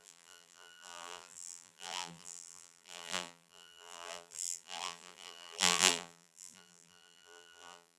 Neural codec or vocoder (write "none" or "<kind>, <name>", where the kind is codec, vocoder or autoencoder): vocoder, BigVGAN v2